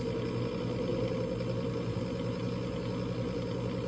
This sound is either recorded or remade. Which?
recorded